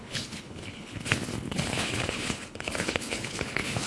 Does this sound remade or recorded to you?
remade